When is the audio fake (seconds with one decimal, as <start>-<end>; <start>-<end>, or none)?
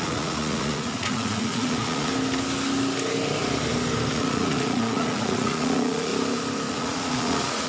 0.0-2.1; 4.1-6.1; 6.7-7.7